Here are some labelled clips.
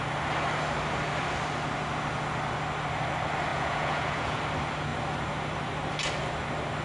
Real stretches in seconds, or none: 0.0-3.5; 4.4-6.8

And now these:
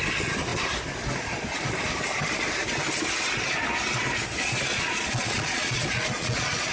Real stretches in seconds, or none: 0.0-4.7

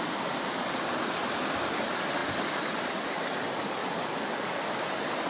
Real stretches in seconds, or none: 0.0-5.3